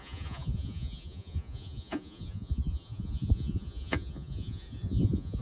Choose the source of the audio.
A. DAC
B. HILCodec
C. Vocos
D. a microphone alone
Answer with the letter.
C